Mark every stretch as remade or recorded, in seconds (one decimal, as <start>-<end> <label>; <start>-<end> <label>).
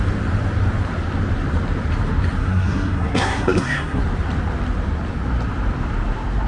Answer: 0.0-2.4 recorded; 2.4-4.0 remade; 4.0-6.5 recorded